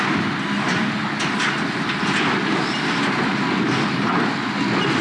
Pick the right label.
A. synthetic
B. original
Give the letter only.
B